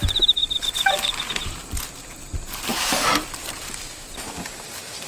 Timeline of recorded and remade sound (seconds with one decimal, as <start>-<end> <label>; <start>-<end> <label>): 0.0-2.7 recorded; 2.7-4.0 remade; 4.0-5.1 recorded